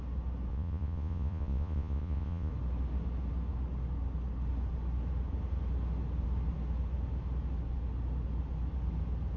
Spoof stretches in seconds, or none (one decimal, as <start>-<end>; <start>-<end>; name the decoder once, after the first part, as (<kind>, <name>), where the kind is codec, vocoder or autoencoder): 0.5-2.5 (vocoder, Vocos)